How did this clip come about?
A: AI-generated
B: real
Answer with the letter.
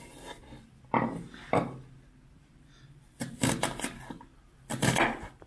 B